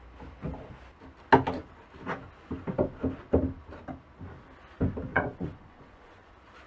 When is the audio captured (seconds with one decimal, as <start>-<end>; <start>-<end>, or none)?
0.0-5.1; 6.3-6.7